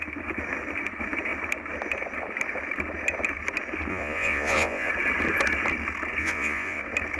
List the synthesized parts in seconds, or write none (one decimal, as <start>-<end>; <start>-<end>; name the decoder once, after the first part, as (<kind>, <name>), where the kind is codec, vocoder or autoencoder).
3.9-4.9 (vocoder, Vocos); 6.2-6.8